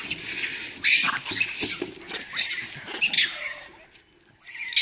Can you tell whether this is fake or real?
real